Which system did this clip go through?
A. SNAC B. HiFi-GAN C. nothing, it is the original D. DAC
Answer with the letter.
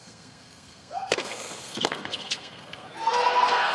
A